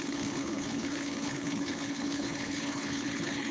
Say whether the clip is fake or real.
fake